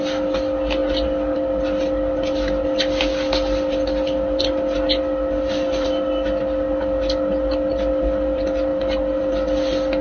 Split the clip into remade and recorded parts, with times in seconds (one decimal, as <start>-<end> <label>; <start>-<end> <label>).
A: 0.0-10.0 recorded